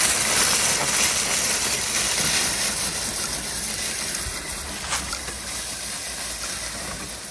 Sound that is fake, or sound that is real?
real